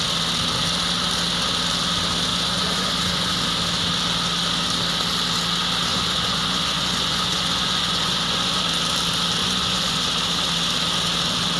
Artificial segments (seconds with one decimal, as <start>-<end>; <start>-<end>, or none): 2.3-3.3; 5.9-8.6; 9.4-10.1